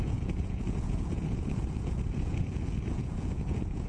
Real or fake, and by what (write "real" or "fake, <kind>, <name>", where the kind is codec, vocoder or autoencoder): fake, vocoder, Vocos